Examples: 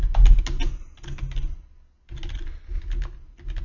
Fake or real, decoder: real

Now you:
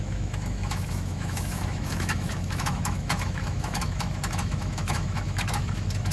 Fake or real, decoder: fake, autoencoder, DAC-VAE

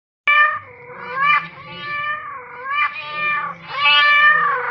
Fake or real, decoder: real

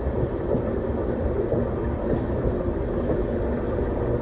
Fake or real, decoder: real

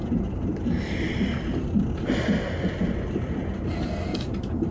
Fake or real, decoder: real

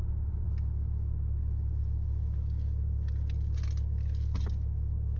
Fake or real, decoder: real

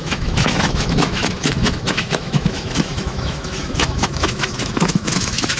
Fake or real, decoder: fake, autoencoder, DAC-VAE